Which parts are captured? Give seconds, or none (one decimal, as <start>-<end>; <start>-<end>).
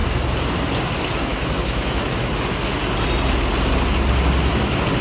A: 0.0-1.3; 2.3-5.0